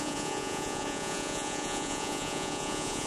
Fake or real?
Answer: fake